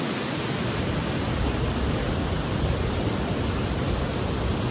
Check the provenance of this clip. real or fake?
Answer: real